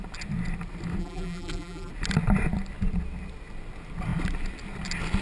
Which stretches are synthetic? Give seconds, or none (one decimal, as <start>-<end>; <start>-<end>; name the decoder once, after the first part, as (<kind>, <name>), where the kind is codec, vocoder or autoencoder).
1.0-1.9 (vocoder, BigVGAN v2)